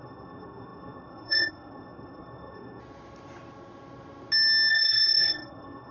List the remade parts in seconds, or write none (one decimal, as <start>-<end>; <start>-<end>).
0.0-2.8; 4.7-5.9